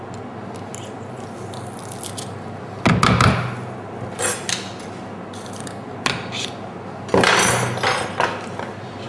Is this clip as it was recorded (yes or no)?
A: yes